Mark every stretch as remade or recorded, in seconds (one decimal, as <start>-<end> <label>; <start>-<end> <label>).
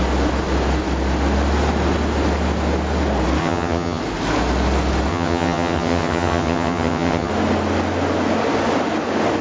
0.0-3.4 recorded; 3.4-4.0 remade; 4.0-5.1 recorded; 5.1-7.3 remade; 7.3-9.4 recorded